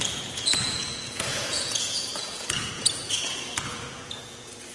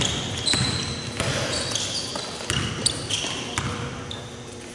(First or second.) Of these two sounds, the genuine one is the second